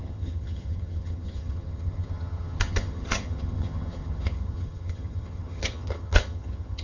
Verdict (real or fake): fake